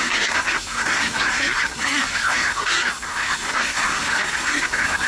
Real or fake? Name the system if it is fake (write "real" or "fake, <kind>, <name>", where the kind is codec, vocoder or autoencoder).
fake, codec, SNAC